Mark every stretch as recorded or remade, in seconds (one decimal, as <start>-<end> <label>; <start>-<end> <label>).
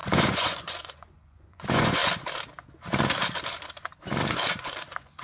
0.0-2.0 remade; 2.0-4.3 recorded; 4.3-5.2 remade